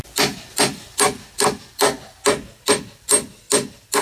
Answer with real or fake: real